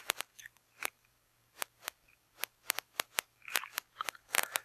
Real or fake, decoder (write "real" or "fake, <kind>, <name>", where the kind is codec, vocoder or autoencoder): fake, codec, DAC